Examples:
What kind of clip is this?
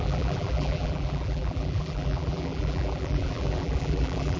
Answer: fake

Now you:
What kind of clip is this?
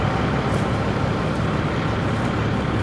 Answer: real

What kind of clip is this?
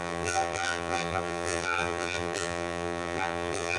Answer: fake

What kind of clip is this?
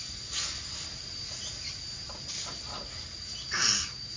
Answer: real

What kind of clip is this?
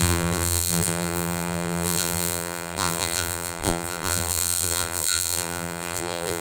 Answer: fake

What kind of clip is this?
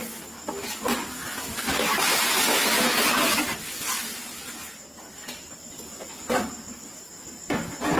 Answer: real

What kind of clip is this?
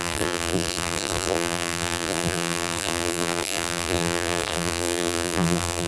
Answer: fake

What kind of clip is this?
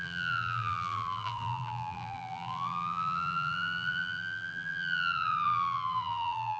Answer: fake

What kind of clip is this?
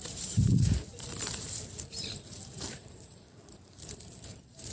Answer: fake